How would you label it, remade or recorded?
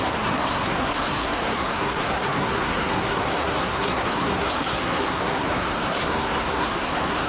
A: remade